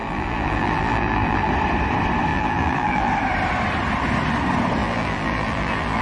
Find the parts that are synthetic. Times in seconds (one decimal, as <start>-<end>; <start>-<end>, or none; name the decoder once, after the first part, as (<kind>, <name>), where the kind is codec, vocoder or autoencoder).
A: 0.0-1.5 (vocoder, BigVGAN v2); 2.3-3.1; 4.8-6.0